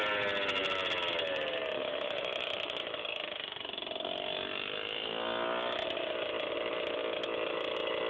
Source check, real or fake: real